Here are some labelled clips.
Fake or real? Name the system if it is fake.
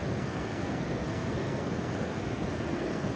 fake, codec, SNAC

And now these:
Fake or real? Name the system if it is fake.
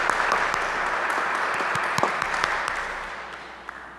real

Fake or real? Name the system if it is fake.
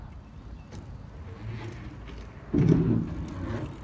real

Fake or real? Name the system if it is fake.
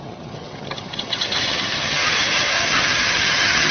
fake, vocoder, HiFi-GAN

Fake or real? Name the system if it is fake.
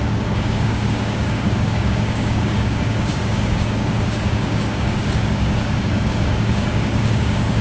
fake, codec, DAC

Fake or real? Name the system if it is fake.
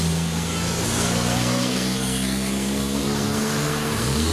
fake, codec, SNAC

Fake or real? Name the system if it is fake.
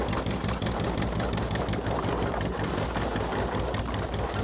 real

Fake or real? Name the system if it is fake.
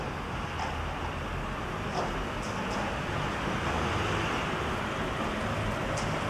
real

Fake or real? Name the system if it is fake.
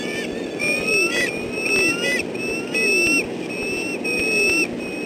real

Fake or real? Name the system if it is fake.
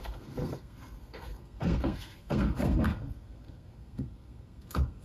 fake, codec, SNAC